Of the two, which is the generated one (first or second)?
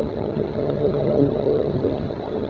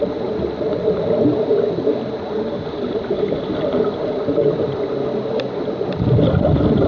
first